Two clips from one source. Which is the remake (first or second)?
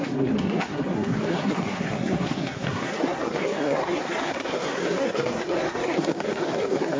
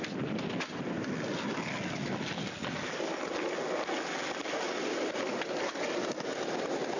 first